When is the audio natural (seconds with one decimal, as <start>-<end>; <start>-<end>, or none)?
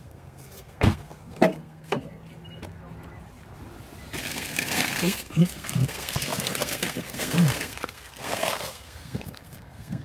2.2-4.2